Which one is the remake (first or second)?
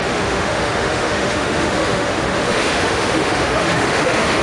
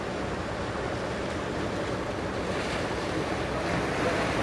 first